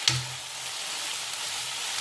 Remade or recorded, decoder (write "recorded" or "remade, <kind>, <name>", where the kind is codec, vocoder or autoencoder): recorded